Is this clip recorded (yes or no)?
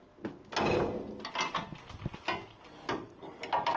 yes